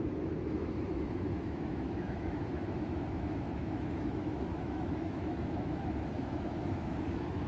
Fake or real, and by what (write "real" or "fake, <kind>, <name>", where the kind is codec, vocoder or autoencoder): fake, autoencoder, DAC-VAE